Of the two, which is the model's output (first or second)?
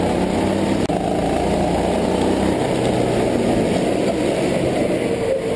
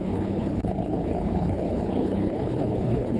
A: second